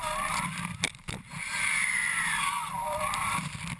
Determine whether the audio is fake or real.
fake